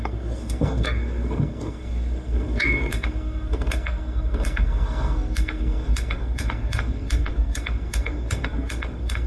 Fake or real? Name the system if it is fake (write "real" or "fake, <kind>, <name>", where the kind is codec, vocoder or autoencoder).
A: fake, codec, SNAC